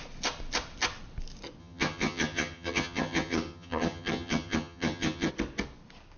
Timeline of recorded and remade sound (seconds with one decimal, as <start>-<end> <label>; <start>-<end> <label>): 0.0-1.6 recorded; 1.6-5.3 remade; 5.3-6.2 recorded

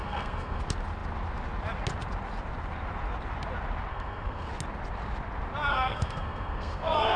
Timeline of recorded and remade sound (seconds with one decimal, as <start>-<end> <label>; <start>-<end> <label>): 0.0-0.6 remade; 0.6-3.9 recorded; 3.9-4.5 remade; 4.5-5.7 recorded; 5.7-7.2 remade

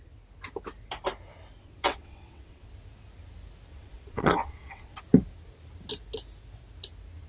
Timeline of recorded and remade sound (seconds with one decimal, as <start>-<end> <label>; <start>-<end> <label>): 0.0-1.6 recorded; 1.6-2.7 remade; 2.7-3.7 recorded; 3.7-5.0 remade; 5.0-7.3 recorded

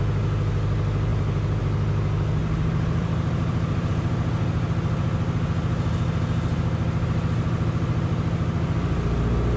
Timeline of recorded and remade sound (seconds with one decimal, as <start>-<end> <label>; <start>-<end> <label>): 0.0-2.4 recorded; 2.4-3.9 remade; 3.9-9.6 recorded

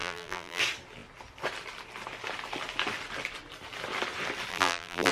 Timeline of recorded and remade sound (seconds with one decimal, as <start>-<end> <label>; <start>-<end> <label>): 0.0-0.6 remade; 0.6-4.5 recorded; 4.5-5.1 remade

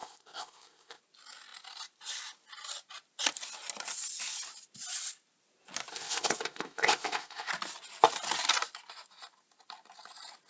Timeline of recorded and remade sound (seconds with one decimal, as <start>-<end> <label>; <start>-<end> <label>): 0.0-1.0 remade; 1.0-5.9 recorded; 5.9-7.5 remade; 7.5-10.5 recorded

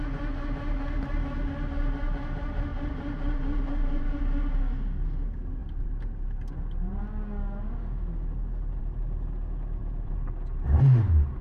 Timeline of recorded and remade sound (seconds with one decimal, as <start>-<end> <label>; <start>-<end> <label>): 0.0-2.7 recorded; 2.7-4.2 remade; 4.2-9.8 recorded; 9.8-10.3 remade; 10.3-11.4 recorded